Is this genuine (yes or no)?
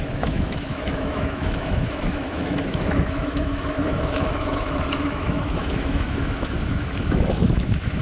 no